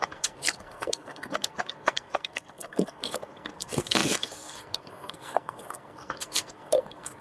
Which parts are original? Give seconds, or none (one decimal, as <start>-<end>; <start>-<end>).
none